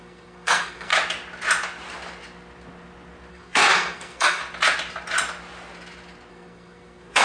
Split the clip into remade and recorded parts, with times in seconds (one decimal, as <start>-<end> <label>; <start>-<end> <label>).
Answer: 0.0-0.9 remade; 0.9-3.3 recorded; 3.3-4.4 remade; 4.4-6.3 recorded; 6.3-7.2 remade